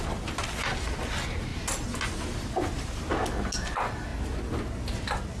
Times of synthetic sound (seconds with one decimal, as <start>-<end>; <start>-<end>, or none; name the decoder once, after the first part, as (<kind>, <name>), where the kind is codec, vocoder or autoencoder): none